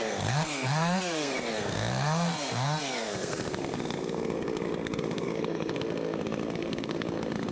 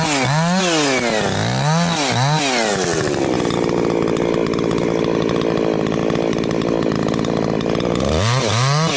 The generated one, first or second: first